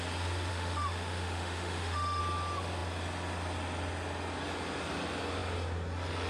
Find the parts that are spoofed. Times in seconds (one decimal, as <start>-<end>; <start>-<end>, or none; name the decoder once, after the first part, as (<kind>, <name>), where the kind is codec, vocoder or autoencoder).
0.5-2.2 (autoencoder, DAC-VAE)